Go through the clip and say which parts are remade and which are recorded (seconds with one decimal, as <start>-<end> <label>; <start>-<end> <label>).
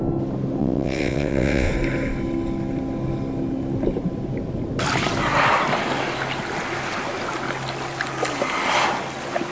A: 0.0-0.6 recorded; 0.6-1.7 remade; 1.7-9.5 recorded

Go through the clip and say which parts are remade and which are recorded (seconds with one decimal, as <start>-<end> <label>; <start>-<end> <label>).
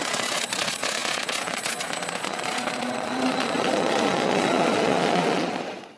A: 0.0-6.0 remade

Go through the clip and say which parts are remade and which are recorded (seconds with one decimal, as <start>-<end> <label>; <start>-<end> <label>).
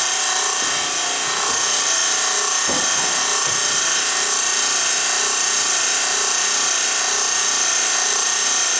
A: 0.0-8.8 recorded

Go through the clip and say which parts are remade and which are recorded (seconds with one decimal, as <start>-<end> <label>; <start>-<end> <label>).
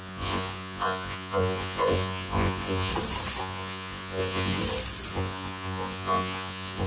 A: 0.0-2.9 remade; 2.9-3.4 recorded; 3.4-4.6 remade; 4.6-5.1 recorded; 5.1-6.9 remade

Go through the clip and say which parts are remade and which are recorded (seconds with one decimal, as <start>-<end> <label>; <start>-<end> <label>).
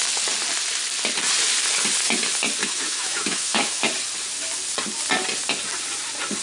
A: 0.0-2.6 recorded; 2.6-3.8 remade; 3.8-6.4 recorded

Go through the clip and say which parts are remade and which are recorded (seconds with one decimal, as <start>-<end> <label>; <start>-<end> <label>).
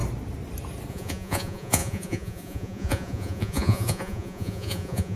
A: 0.0-0.9 recorded; 0.9-5.2 remade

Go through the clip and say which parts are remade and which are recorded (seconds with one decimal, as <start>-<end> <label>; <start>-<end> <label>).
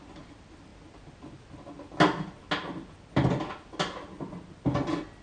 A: 0.0-5.2 recorded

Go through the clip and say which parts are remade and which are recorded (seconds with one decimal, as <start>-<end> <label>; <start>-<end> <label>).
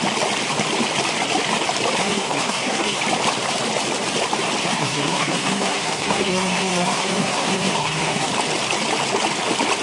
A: 0.0-2.0 recorded; 2.0-3.0 remade; 3.0-4.6 recorded; 4.6-8.3 remade; 8.3-9.8 recorded